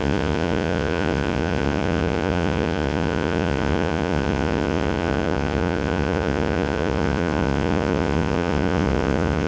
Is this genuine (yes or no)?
no